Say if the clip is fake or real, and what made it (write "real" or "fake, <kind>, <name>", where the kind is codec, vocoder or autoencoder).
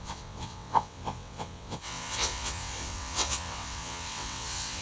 fake, vocoder, WaveNeXt